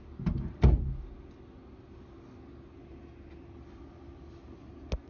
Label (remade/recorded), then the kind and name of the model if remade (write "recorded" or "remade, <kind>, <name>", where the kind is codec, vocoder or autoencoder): recorded